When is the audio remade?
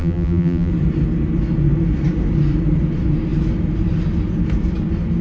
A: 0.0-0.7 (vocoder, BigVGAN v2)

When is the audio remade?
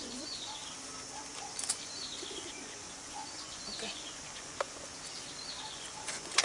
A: 0.0-0.6 (vocoder, Vocos); 1.7-4.9; 5.7-6.4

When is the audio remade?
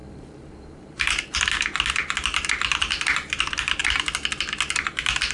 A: 0.0-1.4 (vocoder, BigVGAN v2)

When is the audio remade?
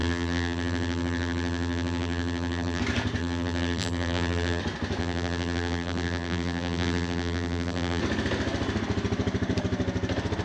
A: 0.0-2.8 (vocoder, BigVGAN v2); 3.2-4.6; 5.0-8.0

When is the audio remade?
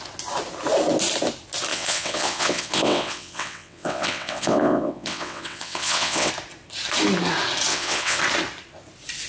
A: 1.7-6.3 (vocoder, WaveNeXt); 7.7-8.2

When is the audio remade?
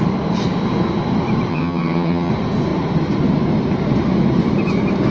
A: 1.5-2.3 (vocoder, HiFi-GAN)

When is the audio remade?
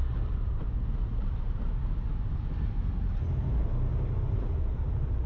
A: 0.0-3.2 (vocoder, BigVGAN v2); 3.9-4.5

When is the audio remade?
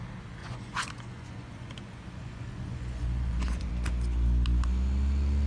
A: 0.4-3.7 (vocoder, Vocos)